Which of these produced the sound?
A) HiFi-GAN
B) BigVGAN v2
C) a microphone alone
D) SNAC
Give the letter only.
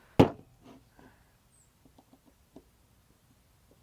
C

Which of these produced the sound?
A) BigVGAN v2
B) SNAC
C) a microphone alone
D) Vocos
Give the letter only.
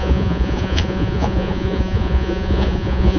D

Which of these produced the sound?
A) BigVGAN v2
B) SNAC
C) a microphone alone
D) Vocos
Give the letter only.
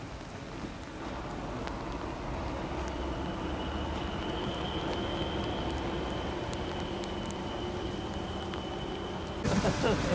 C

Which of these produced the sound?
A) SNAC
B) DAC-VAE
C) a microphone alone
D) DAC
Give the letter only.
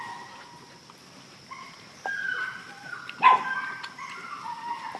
C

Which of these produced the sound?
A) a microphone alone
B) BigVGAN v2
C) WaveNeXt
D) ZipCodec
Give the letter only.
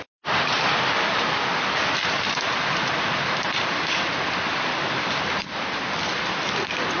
B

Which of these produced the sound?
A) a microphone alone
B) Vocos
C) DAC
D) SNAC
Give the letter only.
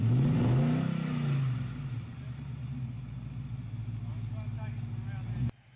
A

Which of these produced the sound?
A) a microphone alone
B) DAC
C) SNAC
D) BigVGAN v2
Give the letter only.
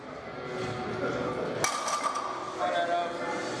A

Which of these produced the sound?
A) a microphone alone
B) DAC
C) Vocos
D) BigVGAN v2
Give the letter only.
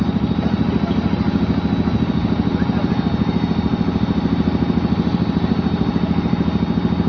A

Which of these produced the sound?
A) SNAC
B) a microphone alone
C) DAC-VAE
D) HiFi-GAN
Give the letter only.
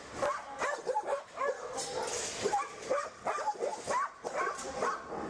B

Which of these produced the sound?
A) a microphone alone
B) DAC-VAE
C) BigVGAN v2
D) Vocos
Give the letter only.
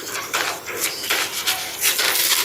A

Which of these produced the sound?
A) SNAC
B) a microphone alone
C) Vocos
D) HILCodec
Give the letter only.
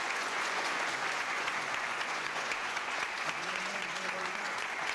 C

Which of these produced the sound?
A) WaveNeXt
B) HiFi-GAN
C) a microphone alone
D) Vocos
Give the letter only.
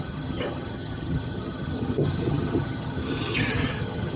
B